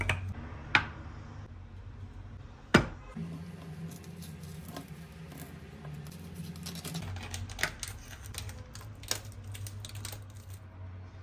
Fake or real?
real